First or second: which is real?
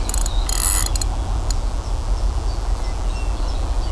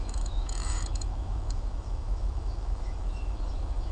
first